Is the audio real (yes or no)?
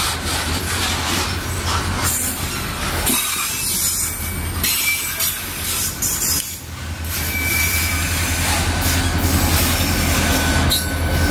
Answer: yes